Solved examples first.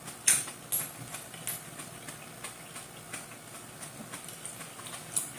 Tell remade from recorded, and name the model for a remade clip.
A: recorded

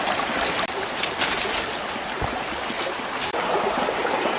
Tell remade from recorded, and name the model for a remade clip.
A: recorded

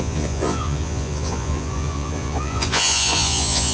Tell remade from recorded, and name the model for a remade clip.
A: remade, vocoder, Vocos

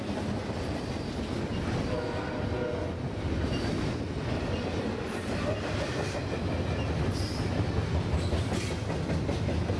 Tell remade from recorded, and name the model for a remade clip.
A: recorded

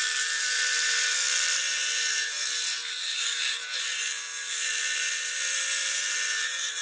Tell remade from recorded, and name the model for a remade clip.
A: remade, vocoder, BigVGAN v2